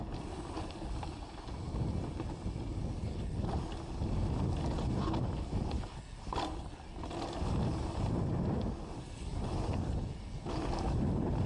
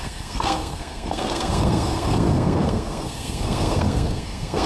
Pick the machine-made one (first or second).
second